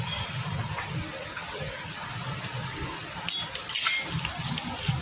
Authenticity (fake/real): real